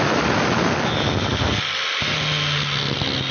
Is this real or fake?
real